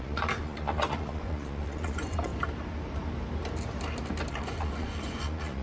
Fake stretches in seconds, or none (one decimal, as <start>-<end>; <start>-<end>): 0.0-2.3; 4.3-5.6